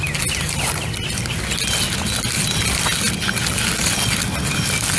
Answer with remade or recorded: recorded